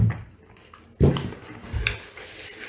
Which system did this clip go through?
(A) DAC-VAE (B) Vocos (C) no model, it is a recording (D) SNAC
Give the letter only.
C